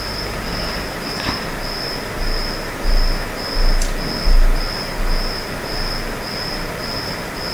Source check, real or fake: real